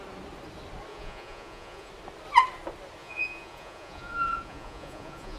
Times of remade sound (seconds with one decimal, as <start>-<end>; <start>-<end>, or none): 0.9-1.9; 3.0-5.4